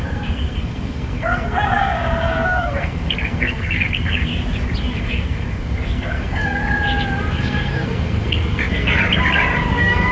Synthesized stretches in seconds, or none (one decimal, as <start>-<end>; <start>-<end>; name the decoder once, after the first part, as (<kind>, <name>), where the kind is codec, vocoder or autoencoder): 0.0-4.3 (codec, SNAC); 5.0-6.6; 7.3-9.0; 9.7-10.1